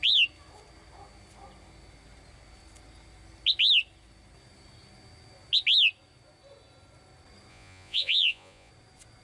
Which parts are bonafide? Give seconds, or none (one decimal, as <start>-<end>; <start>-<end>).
0.0-7.5; 8.7-9.2